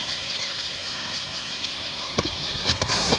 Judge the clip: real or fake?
fake